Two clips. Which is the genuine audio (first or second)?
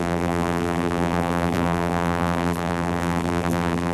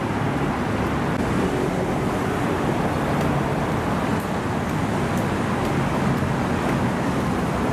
second